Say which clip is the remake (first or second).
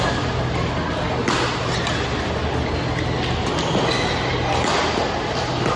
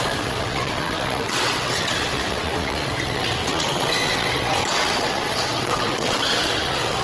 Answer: second